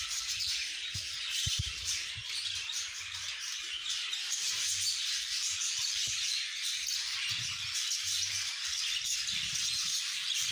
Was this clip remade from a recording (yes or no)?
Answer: yes